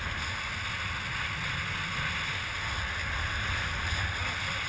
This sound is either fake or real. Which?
real